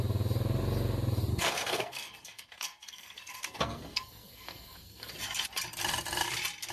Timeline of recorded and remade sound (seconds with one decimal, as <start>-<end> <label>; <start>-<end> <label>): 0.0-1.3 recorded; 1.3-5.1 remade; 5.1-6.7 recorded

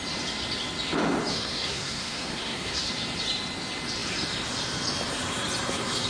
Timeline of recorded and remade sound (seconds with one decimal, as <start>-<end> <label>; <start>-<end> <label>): 0.0-1.3 recorded; 1.3-2.9 remade; 2.9-6.1 recorded

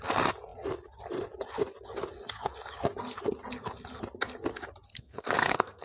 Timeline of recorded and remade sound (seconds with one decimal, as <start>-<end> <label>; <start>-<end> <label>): 0.0-4.9 recorded; 4.9-5.8 remade